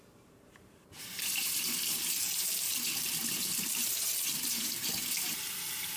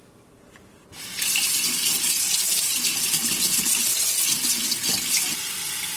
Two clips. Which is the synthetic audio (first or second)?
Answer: first